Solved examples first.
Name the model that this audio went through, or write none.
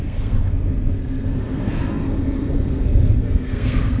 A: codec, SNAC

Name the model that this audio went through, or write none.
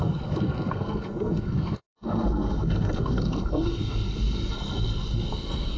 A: codec, SNAC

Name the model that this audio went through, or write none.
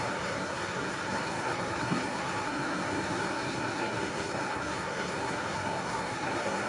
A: codec, SNAC